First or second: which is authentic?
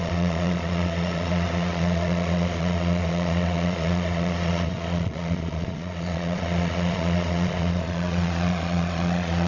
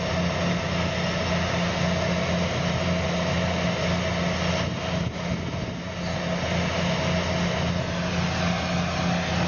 second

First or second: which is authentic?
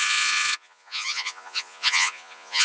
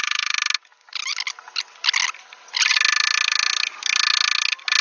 second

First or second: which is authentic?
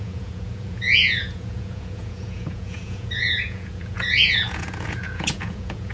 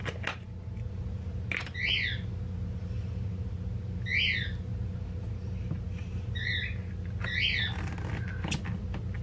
second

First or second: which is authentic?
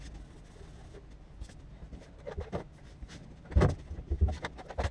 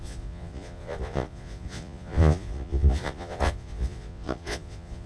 first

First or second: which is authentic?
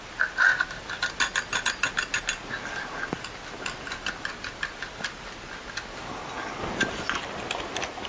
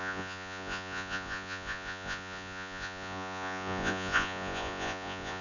first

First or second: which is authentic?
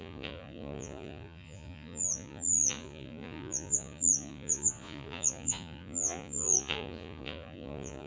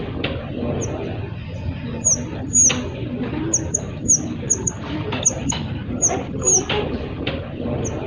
second